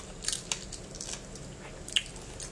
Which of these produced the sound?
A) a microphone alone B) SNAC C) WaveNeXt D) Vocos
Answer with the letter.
A